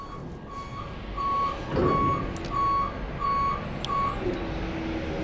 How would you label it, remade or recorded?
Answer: recorded